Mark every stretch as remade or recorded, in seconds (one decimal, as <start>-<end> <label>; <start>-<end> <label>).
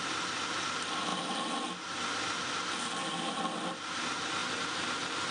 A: 0.0-5.3 recorded